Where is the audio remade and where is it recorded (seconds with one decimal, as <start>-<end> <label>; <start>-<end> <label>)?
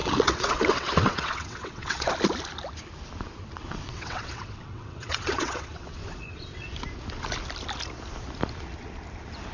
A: 0.0-2.1 remade; 2.1-3.4 recorded; 3.4-6.7 remade; 6.7-9.5 recorded